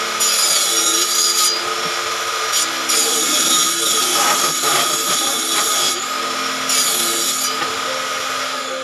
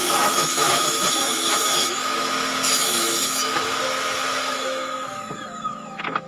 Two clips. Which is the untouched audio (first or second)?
first